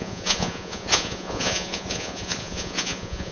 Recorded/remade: remade